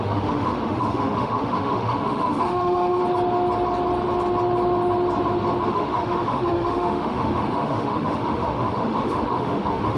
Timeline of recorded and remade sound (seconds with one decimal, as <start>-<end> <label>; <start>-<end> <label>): 0.0-3.0 remade; 3.0-5.7 recorded; 5.7-10.0 remade